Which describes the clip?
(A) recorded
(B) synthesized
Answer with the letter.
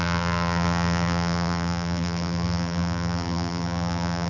B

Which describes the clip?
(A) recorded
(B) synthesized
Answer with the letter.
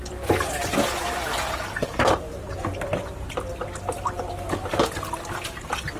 A